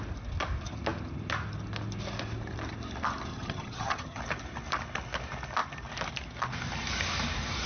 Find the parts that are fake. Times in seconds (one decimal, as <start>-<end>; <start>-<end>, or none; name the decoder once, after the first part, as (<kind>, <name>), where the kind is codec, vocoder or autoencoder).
3.3-4.2 (vocoder, HiFi-GAN)